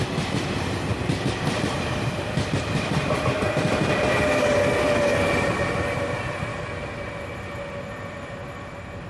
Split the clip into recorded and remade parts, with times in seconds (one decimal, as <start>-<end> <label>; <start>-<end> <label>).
0.0-0.9 recorded; 0.9-4.2 remade; 4.2-9.1 recorded